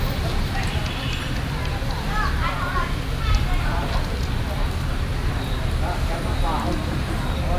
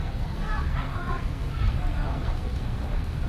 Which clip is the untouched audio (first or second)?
first